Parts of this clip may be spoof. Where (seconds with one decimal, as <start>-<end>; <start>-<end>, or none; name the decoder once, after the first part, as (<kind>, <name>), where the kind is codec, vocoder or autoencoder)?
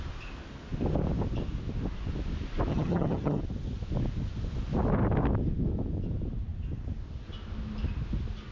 2.7-3.4 (vocoder, HiFi-GAN)